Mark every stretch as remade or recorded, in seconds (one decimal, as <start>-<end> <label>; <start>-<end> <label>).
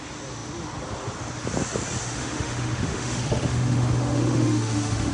0.0-2.0 recorded; 2.0-5.1 remade